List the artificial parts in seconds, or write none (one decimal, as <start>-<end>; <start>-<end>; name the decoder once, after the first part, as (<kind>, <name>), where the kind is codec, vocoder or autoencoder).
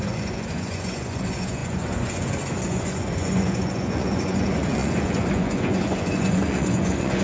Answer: 0.0-7.2 (vocoder, Vocos)